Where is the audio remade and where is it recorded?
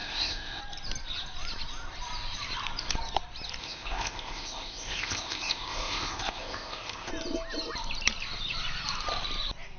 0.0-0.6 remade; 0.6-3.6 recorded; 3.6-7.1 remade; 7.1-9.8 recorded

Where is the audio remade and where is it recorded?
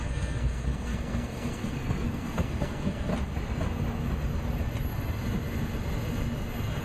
0.0-3.1 remade; 3.1-6.8 recorded